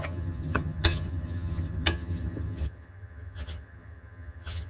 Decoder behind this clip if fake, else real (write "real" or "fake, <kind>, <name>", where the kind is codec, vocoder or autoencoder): fake, vocoder, HiFi-GAN